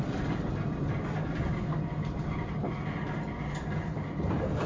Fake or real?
real